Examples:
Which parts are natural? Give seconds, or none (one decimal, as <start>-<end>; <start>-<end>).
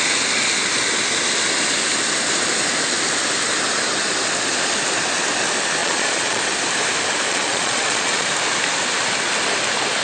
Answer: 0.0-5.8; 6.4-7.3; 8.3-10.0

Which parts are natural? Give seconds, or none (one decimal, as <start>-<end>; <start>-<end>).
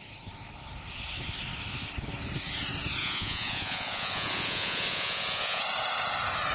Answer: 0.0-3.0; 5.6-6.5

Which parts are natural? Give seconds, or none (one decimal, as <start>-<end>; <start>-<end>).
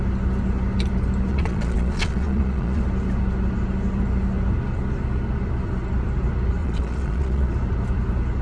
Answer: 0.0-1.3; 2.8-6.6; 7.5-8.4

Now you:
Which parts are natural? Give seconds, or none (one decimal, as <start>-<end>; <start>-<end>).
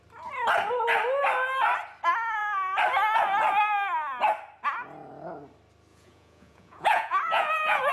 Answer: 0.0-5.9